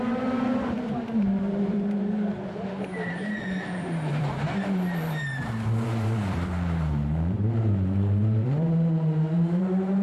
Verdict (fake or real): fake